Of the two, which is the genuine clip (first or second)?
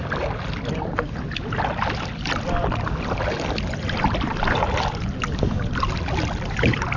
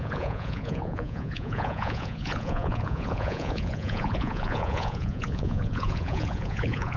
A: first